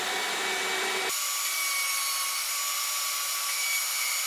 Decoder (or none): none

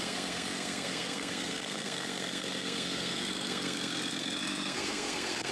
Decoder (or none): codec, SNAC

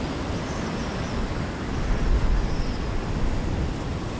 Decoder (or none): none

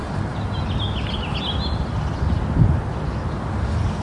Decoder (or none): none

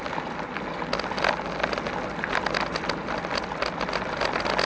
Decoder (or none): none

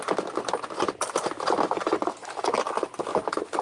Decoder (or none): none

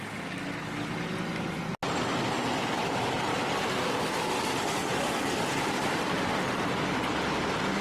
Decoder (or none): none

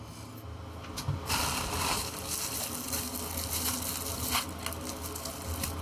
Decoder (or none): none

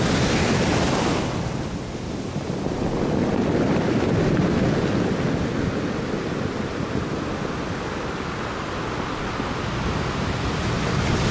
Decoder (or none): none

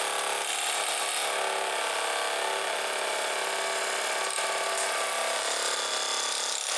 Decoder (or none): none